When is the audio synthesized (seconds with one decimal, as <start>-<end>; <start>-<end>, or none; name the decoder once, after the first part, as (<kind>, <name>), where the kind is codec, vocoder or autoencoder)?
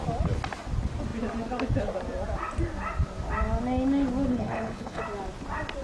4.3-5.0 (codec, HILCodec)